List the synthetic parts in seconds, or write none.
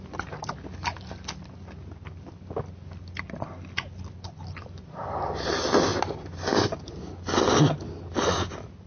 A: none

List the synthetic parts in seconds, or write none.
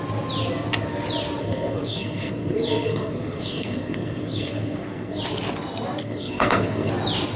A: 1.4-5.2 (codec, SNAC); 6.0-6.9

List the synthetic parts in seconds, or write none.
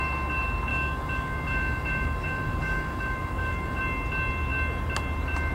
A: 0.7-3.8 (autoencoder, DAC-VAE)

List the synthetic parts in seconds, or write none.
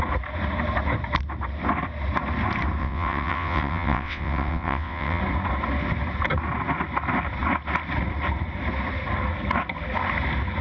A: 2.8-5.2 (vocoder, WaveNeXt)